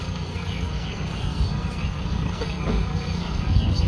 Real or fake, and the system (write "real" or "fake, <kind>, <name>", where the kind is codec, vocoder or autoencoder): fake, codec, SNAC